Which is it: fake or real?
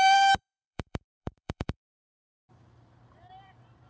fake